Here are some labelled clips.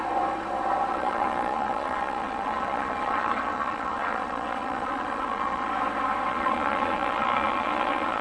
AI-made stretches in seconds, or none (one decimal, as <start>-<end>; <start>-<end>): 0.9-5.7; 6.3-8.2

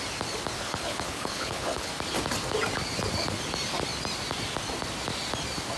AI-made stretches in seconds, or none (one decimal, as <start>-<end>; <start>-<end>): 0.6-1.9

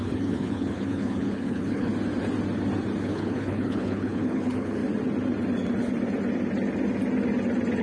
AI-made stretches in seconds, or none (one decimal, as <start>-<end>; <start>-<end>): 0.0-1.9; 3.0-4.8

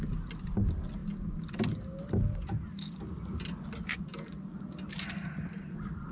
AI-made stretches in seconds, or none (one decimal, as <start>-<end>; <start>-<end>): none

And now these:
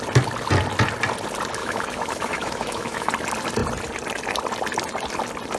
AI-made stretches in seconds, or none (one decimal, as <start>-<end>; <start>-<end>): 1.6-3.1